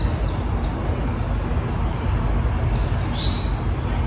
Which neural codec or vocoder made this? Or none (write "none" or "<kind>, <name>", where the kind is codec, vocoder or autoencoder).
none